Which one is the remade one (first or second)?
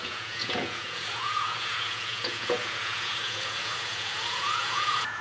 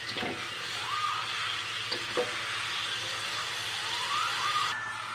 first